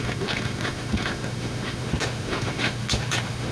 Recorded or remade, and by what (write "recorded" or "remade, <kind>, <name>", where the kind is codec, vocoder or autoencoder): remade, autoencoder, DAC-VAE